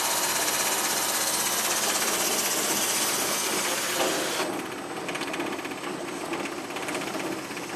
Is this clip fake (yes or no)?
no